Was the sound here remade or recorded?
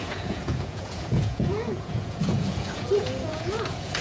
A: remade